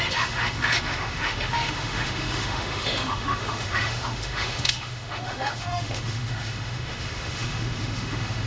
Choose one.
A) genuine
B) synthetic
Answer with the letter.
B